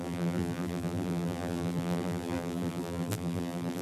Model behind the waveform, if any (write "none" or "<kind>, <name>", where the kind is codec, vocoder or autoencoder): vocoder, BigVGAN v2